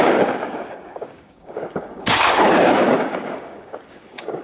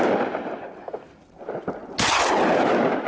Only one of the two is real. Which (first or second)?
second